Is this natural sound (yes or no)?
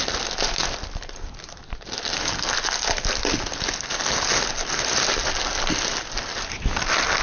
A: yes